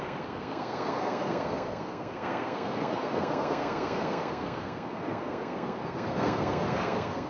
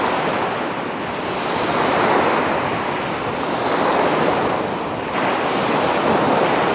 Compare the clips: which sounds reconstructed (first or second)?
first